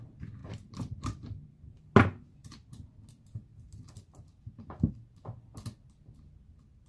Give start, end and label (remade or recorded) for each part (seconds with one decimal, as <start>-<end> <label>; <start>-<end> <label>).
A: 0.0-0.4 recorded; 0.4-1.8 remade; 1.8-2.4 recorded; 2.4-3.0 remade; 3.0-6.9 recorded